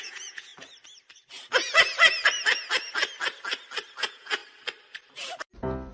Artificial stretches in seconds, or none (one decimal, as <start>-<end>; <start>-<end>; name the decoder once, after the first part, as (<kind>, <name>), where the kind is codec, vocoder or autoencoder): 0.0-0.5 (vocoder, Vocos); 4.0-4.4

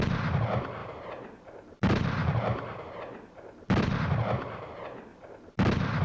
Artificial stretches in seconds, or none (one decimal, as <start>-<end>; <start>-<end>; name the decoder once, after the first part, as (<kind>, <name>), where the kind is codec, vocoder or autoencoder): 0.8-4.0 (vocoder, BigVGAN v2); 5.1-6.0

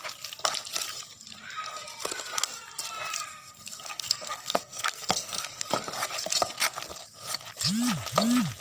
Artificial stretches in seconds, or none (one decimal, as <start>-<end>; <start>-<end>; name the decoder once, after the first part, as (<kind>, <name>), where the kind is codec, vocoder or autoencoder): 3.3-5.7 (codec, SNAC)

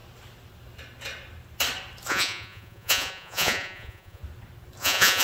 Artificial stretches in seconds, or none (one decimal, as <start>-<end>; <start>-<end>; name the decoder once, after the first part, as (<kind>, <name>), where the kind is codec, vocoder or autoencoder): 2.1-4.2 (vocoder, Vocos); 4.8-5.2

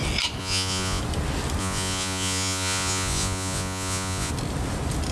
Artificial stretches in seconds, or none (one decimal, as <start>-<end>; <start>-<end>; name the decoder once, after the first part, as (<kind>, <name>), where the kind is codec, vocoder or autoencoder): 0.4-1.0 (vocoder, Vocos); 1.6-4.3